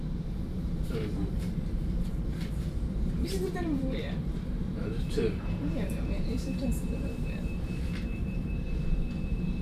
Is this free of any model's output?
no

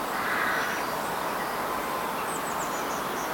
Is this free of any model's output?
yes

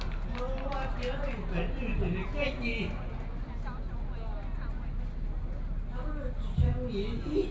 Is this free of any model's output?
yes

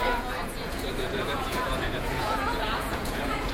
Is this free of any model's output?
no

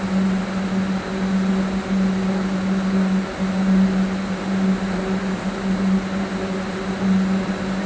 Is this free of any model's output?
yes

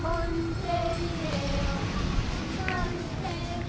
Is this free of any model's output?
yes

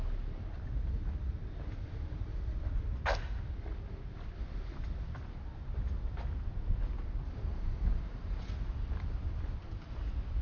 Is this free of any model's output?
yes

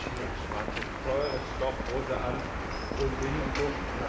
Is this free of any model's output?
yes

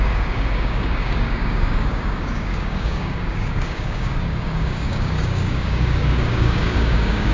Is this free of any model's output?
no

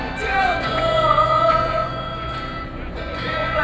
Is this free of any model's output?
no